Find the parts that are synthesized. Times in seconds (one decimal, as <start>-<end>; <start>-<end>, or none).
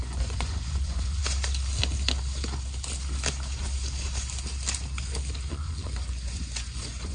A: 0.0-1.2; 5.5-7.1